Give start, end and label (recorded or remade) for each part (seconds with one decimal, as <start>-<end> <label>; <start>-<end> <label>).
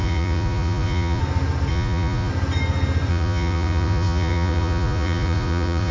0.0-1.2 remade; 1.2-1.7 recorded; 1.7-2.3 remade; 2.3-3.1 recorded; 3.1-5.9 remade